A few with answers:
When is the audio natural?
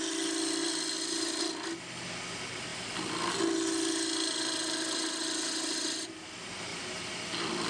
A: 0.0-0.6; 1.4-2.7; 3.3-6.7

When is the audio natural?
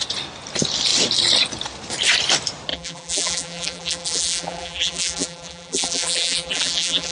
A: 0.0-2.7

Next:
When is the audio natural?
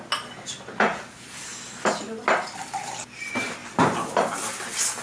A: 0.0-1.5; 3.0-3.6; 4.2-5.0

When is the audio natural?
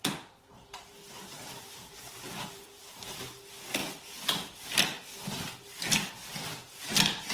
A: 0.0-3.8; 4.8-7.3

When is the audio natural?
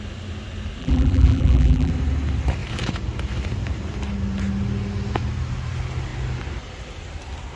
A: 0.0-0.8; 1.9-7.6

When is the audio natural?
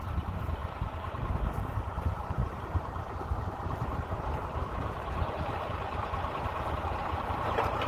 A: none